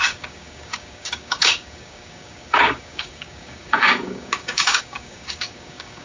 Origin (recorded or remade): remade